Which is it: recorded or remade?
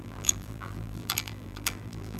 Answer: remade